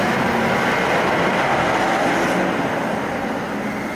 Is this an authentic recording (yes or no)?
yes